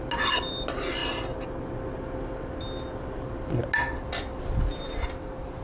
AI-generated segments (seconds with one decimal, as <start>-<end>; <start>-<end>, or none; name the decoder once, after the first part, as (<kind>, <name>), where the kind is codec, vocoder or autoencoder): none